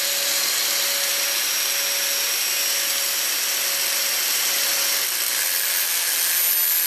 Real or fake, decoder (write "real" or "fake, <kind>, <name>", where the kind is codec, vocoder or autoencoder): real